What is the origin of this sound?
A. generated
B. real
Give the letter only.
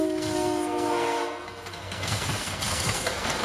A